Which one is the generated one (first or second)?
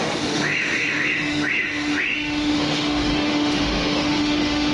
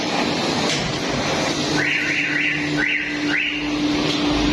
first